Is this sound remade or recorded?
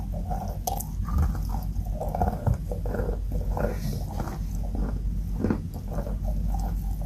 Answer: recorded